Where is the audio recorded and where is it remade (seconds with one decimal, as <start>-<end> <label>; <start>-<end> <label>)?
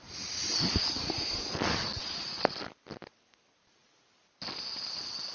0.0-5.3 recorded